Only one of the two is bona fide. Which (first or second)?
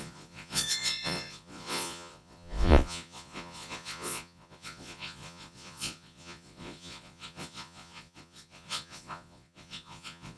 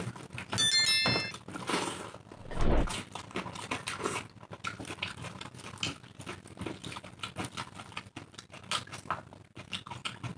second